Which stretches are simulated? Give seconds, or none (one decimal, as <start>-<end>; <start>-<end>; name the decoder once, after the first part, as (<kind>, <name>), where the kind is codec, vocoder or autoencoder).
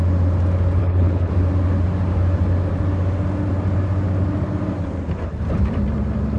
0.8-1.3 (codec, HILCodec)